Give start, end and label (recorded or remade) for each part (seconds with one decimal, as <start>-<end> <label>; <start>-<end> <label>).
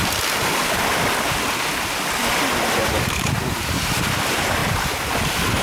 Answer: 0.0-2.8 recorded; 2.8-3.9 remade; 3.9-4.6 recorded; 4.6-5.1 remade; 5.1-5.6 recorded